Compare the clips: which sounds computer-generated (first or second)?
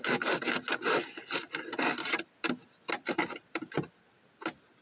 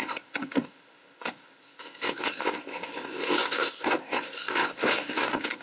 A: second